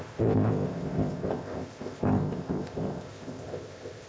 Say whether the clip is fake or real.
fake